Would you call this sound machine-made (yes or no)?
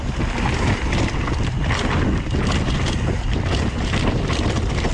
no